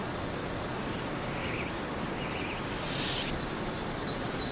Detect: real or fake real